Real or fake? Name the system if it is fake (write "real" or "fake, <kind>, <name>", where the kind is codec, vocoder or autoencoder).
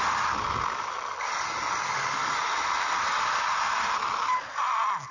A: real